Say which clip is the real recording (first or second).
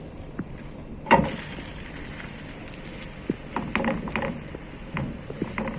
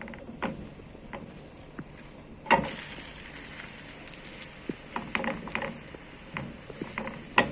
second